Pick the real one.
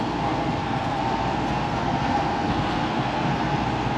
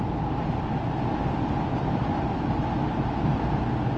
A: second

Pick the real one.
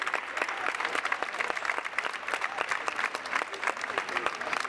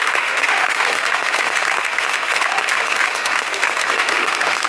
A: first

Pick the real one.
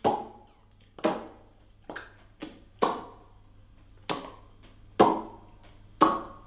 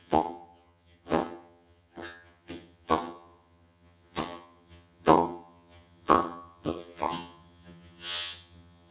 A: first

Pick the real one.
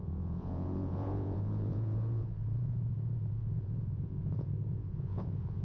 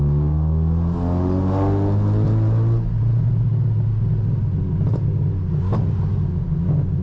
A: second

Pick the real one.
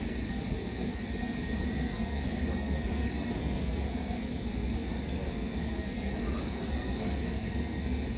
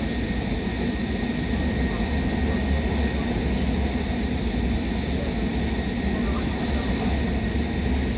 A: second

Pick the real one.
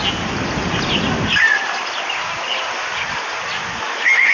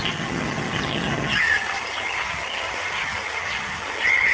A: first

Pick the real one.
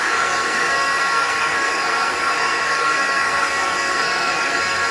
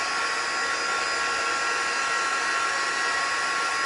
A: second